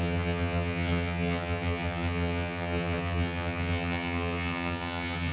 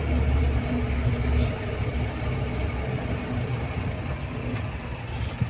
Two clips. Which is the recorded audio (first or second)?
second